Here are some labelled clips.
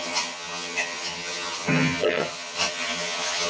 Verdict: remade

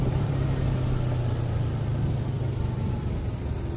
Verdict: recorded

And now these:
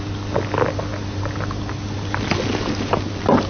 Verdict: recorded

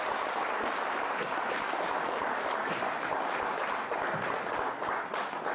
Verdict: recorded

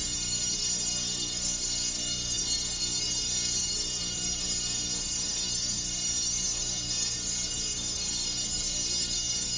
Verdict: remade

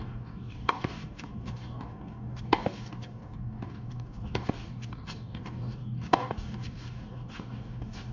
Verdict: remade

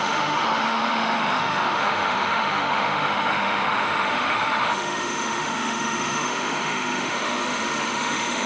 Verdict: remade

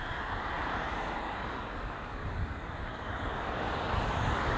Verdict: remade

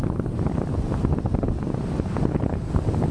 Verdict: recorded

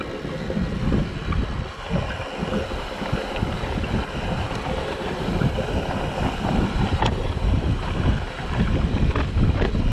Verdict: recorded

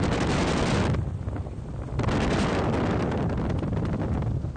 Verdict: recorded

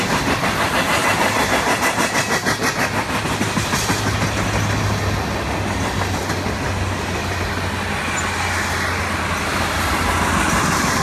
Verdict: recorded